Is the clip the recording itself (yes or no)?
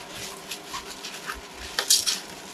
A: yes